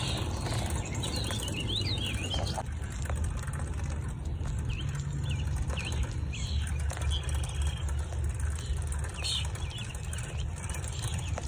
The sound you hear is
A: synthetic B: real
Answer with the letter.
B